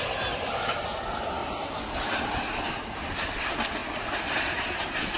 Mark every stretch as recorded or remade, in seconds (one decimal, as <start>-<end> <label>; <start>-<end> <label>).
0.0-5.2 recorded

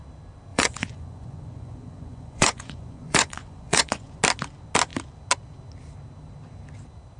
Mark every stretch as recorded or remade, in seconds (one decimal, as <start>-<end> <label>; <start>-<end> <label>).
0.0-0.5 recorded; 0.5-4.2 remade; 4.2-7.2 recorded

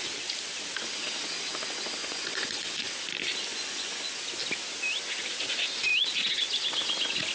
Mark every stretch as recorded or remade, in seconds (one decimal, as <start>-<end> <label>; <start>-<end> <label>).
0.0-2.0 recorded; 2.0-2.9 remade; 2.9-3.5 recorded; 3.5-4.2 remade; 4.2-7.3 recorded